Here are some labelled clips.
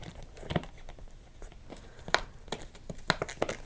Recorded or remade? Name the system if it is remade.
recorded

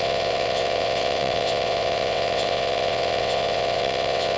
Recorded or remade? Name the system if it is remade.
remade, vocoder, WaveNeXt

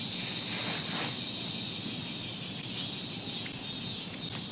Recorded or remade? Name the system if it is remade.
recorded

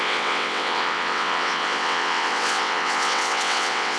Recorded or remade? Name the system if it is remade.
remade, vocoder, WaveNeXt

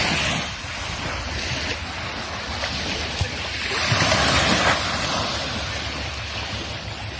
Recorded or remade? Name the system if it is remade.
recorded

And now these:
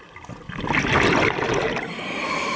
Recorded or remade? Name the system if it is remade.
recorded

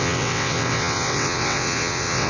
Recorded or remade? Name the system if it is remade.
remade, vocoder, WaveNeXt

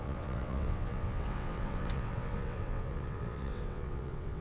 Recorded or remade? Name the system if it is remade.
remade, vocoder, WaveNeXt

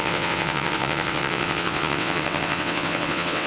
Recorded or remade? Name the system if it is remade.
remade, vocoder, WaveNeXt